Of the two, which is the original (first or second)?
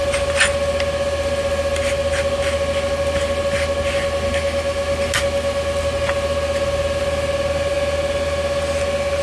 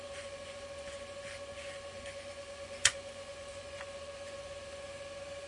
first